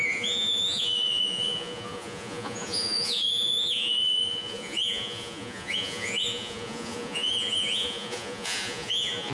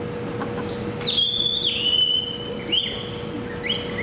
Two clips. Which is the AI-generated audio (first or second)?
first